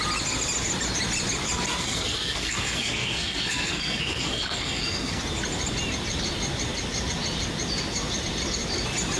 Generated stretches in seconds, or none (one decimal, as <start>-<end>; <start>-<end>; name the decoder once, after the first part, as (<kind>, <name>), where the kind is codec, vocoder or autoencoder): 1.7-5.2 (codec, SNAC)